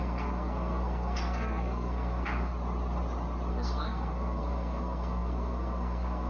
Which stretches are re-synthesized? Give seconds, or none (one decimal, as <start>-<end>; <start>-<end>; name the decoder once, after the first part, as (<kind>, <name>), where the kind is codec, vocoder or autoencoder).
0.0-2.5 (codec, SNAC); 3.5-6.3